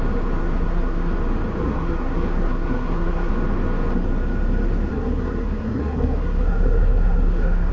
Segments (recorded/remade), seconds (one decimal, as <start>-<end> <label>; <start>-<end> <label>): 0.0-0.4 recorded; 0.4-1.1 remade; 1.1-1.6 recorded; 1.6-3.3 remade; 3.3-4.9 recorded; 4.9-7.7 remade